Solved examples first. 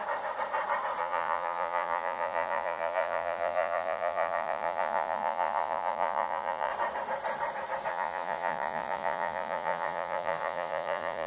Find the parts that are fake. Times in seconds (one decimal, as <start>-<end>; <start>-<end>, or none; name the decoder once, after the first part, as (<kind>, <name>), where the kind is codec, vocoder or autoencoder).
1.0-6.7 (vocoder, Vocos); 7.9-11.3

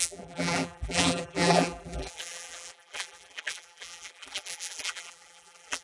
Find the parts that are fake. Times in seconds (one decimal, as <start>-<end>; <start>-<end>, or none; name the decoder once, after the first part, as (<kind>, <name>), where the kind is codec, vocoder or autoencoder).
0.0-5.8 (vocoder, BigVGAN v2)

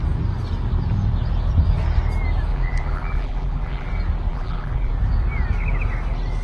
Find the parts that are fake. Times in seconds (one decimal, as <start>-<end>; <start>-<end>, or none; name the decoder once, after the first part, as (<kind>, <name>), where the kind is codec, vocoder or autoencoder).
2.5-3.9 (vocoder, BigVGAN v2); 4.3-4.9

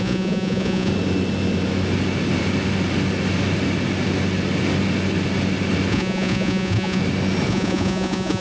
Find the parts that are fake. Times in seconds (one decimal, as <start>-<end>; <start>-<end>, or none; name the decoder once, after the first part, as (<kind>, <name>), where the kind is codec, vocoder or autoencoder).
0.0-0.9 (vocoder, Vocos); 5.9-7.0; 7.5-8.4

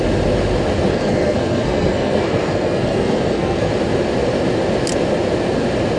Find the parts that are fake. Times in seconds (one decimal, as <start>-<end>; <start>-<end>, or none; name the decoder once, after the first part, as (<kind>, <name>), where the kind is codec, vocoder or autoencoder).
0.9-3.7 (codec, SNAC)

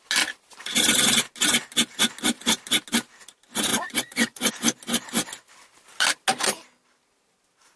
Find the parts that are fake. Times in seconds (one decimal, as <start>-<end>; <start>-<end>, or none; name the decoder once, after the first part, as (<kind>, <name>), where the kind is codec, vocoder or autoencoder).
3.7-4.5 (vocoder, Vocos)